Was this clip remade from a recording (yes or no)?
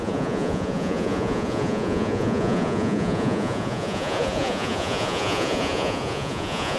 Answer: yes